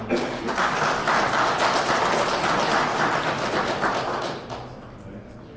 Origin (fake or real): real